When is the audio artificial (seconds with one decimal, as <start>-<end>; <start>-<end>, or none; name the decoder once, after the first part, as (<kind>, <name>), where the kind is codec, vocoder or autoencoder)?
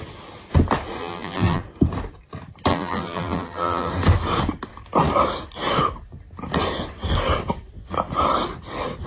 1.0-1.6 (vocoder, BigVGAN v2); 2.7-3.9